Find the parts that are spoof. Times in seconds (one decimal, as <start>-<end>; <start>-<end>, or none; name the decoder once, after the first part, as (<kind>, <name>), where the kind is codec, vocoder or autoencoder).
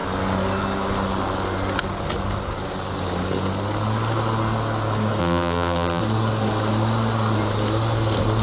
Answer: 5.2-6.0 (vocoder, BigVGAN v2)